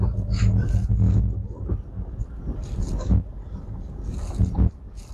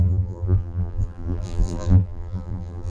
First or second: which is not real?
second